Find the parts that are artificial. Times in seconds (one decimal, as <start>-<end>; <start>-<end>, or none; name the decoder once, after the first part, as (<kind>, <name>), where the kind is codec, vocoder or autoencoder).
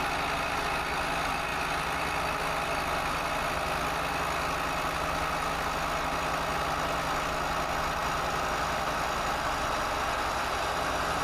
none